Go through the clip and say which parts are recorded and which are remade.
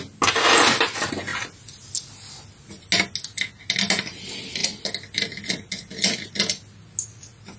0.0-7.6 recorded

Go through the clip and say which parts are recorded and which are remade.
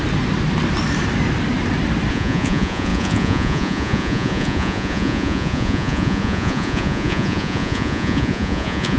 0.0-2.1 recorded; 2.1-9.0 remade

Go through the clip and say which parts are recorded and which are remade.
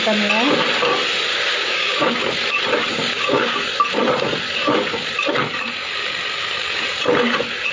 0.0-1.3 recorded; 1.3-2.1 remade; 2.1-2.9 recorded; 2.9-3.5 remade; 3.5-7.7 recorded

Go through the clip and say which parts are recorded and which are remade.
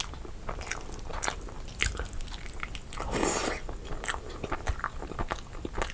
0.0-5.9 recorded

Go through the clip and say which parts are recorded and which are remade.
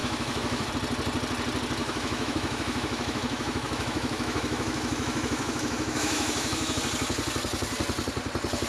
0.0-0.7 remade; 0.7-1.8 recorded; 1.8-6.8 remade; 6.8-8.7 recorded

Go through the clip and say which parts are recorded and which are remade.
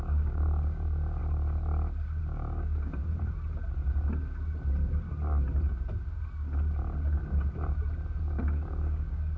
0.0-1.2 remade; 1.2-2.2 recorded; 2.2-3.0 remade; 3.0-8.2 recorded; 8.2-9.4 remade